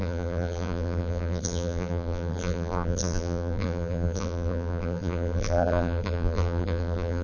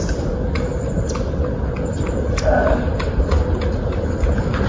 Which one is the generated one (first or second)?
first